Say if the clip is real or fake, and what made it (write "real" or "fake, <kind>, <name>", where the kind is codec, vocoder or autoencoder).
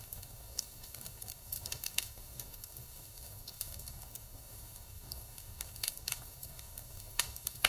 fake, codec, DAC